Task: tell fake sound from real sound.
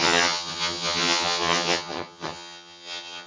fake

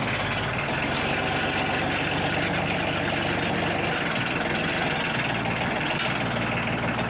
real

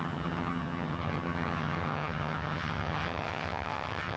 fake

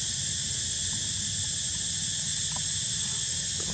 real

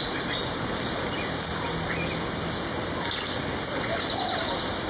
real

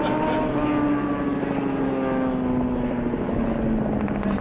real